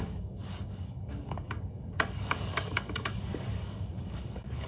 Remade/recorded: remade